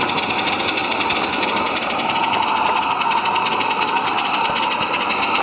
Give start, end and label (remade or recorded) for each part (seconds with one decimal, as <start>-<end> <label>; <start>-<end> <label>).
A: 0.0-5.4 recorded